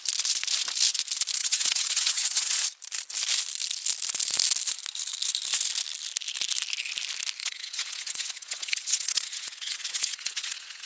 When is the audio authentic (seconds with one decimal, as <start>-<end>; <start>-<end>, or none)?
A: 0.0-1.4; 2.6-7.4